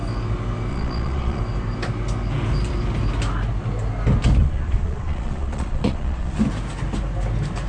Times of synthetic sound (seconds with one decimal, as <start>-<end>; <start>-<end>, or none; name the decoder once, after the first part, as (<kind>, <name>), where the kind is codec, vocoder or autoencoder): 0.7-1.4 (vocoder, Vocos); 4.4-6.4